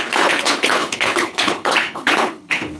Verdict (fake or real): fake